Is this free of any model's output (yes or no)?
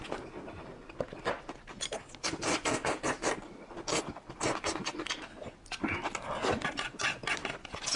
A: yes